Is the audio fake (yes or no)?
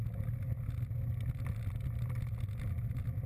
no